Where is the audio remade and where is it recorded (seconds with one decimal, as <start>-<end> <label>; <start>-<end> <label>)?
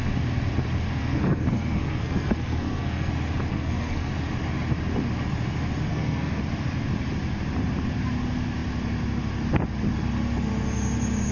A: 0.0-1.0 recorded; 1.0-3.1 remade; 3.1-3.5 recorded; 3.5-4.1 remade; 4.1-5.9 recorded; 5.9-6.4 remade; 6.4-11.3 recorded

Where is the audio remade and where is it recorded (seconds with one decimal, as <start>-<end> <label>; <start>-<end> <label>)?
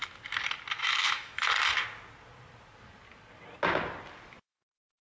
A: 0.0-0.8 recorded; 0.8-1.4 remade; 1.4-4.4 recorded; 4.4-5.0 remade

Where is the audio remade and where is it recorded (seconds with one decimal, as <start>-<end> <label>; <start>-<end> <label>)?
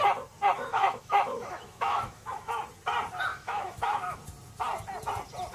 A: 0.0-0.7 recorded; 0.7-2.6 remade; 2.6-3.3 recorded; 3.3-4.2 remade; 4.2-5.5 recorded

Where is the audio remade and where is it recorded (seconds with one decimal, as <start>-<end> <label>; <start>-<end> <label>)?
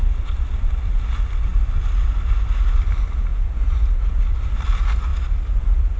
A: 0.0-3.3 recorded; 3.3-4.2 remade; 4.2-6.0 recorded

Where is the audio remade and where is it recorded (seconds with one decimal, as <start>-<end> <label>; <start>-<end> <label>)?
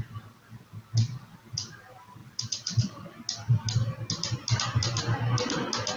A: 0.0-2.2 recorded; 2.2-2.8 remade; 2.8-6.0 recorded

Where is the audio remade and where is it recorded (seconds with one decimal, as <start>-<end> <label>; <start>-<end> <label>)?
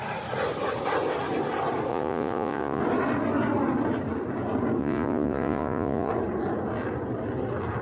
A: 0.0-1.9 recorded; 1.9-2.8 remade; 2.8-4.8 recorded; 4.8-6.1 remade; 6.1-7.8 recorded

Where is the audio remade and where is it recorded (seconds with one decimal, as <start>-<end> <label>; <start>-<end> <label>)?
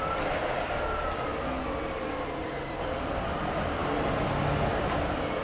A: 0.0-5.4 remade